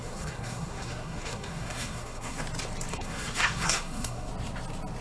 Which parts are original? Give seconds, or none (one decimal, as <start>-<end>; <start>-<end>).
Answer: 2.4-2.9; 4.3-5.0